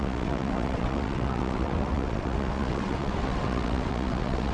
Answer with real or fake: fake